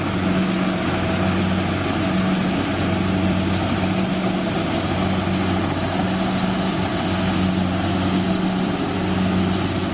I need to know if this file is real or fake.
real